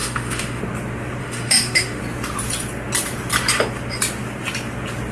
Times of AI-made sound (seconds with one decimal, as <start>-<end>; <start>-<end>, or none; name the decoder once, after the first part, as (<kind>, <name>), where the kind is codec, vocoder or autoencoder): 0.0-0.6 (autoencoder, DAC-VAE); 1.2-2.0